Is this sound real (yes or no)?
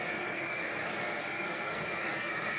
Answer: no